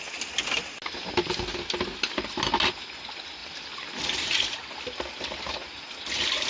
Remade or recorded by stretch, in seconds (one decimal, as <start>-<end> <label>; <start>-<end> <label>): 0.0-6.5 recorded